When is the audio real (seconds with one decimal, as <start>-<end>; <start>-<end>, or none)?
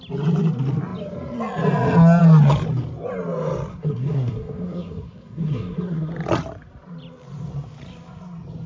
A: 0.0-3.7; 6.1-8.7